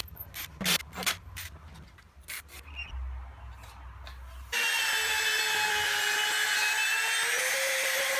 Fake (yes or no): no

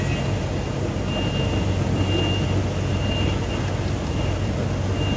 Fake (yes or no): no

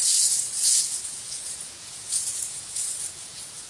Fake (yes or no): yes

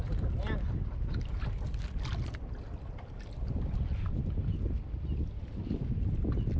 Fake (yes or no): no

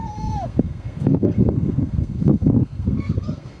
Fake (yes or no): yes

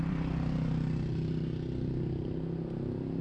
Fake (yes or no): no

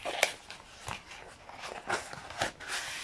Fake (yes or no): no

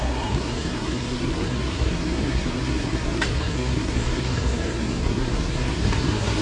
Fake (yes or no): yes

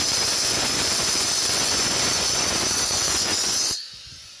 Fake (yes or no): yes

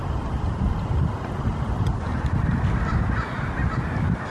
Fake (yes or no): no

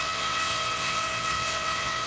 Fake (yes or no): yes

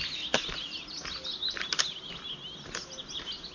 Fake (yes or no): no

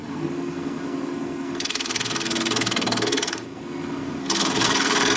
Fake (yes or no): yes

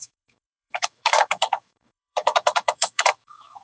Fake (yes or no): yes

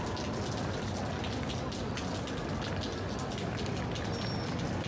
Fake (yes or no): no